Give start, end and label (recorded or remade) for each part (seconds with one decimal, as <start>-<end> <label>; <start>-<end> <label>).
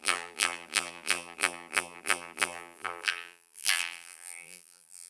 0.0-5.1 remade